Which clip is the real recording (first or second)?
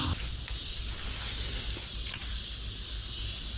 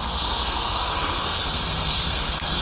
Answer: first